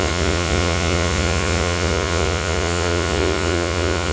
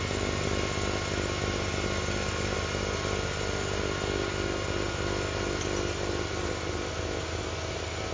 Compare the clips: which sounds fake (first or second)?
first